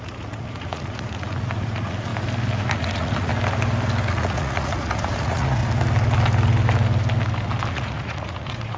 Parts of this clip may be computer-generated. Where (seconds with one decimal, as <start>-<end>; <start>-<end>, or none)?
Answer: 0.0-2.1; 2.6-3.3; 4.1-5.6; 7.7-8.8